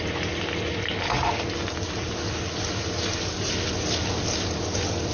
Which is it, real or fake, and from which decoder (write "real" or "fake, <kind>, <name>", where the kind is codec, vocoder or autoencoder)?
real